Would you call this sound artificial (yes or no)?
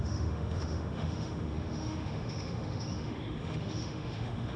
yes